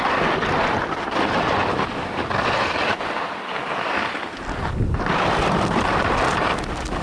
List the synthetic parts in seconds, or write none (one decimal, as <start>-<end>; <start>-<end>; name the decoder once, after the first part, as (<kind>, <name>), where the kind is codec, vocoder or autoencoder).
none